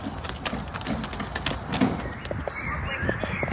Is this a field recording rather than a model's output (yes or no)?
yes